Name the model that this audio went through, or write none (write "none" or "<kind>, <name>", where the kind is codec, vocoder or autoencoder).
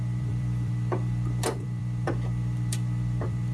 vocoder, BigVGAN v2